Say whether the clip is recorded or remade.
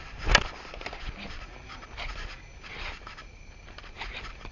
recorded